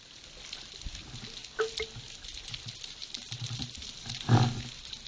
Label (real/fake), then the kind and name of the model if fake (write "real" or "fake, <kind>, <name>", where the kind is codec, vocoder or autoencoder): real